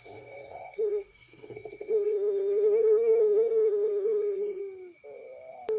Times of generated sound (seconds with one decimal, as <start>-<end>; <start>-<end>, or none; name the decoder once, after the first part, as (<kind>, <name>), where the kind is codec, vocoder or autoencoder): 0.0-4.6 (codec, SNAC)